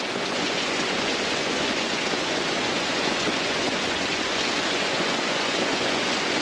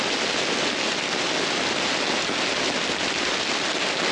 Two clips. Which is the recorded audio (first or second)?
second